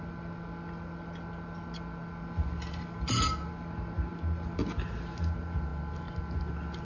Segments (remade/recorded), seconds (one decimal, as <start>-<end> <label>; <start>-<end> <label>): 0.0-6.8 recorded

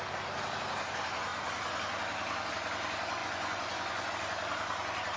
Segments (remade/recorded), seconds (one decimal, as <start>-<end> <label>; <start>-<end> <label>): 0.0-3.2 recorded; 3.2-4.1 remade; 4.1-5.2 recorded

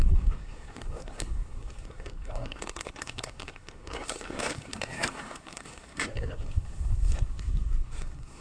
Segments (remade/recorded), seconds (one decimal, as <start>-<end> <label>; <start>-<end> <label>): 0.0-8.4 remade